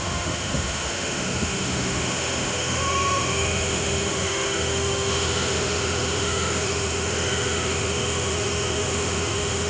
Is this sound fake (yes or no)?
yes